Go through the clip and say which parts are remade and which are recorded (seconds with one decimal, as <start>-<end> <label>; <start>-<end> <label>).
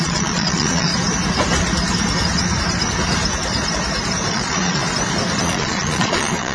0.0-0.9 remade; 0.9-4.3 recorded; 4.3-4.8 remade; 4.8-5.4 recorded; 5.4-6.5 remade